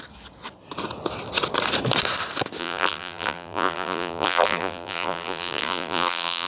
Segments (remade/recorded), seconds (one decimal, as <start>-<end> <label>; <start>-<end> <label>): 0.0-2.6 recorded; 2.6-6.5 remade